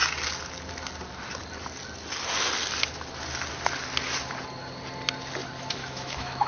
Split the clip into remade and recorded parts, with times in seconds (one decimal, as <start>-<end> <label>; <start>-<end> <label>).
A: 0.0-5.8 recorded; 5.8-6.5 remade